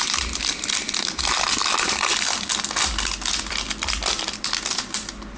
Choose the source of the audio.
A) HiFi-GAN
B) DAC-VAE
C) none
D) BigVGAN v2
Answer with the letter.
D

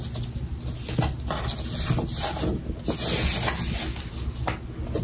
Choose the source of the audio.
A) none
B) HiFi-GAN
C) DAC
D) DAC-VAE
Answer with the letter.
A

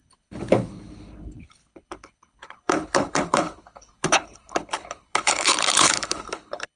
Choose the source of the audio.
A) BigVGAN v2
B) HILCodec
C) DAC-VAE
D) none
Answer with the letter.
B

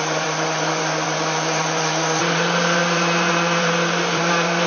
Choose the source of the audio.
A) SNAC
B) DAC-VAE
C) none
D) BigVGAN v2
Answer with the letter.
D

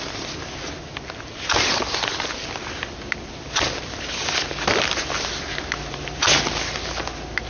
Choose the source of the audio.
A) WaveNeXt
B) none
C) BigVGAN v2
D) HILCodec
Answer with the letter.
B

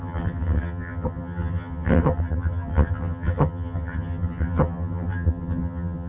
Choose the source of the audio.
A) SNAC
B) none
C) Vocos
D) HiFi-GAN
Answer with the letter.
D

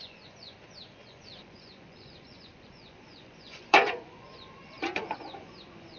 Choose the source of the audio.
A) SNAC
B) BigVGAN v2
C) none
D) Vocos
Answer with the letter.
D